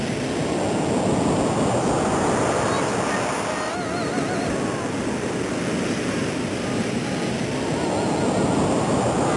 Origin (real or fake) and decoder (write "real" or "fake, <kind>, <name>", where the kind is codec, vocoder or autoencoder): real